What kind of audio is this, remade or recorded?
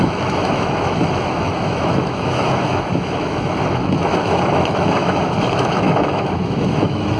remade